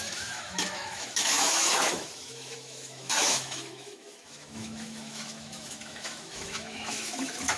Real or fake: fake